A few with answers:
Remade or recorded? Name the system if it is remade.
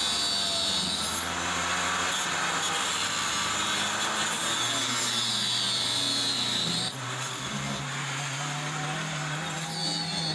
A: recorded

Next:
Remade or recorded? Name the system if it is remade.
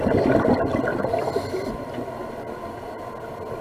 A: recorded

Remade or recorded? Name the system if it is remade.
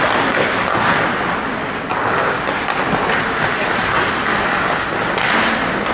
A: recorded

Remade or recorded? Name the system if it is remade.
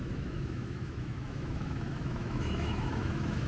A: remade, autoencoder, DAC-VAE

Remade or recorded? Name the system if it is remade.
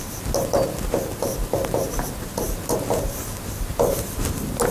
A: recorded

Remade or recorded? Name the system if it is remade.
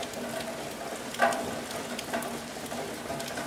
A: recorded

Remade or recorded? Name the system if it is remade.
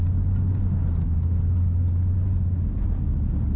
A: recorded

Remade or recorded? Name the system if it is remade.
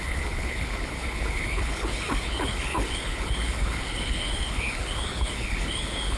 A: remade, codec, HILCodec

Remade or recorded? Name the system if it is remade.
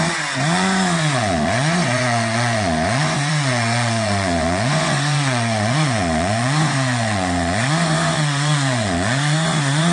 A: remade, vocoder, Vocos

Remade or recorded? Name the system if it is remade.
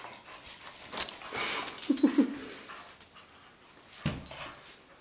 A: recorded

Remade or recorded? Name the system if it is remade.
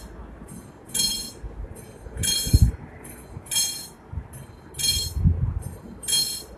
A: recorded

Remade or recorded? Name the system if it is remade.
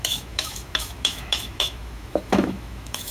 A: remade, autoencoder, DAC-VAE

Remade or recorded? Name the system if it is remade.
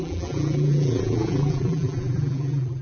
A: remade, vocoder, BigVGAN v2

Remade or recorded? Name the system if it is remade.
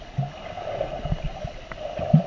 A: recorded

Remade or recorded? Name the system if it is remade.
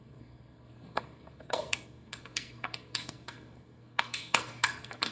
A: remade, codec, SNAC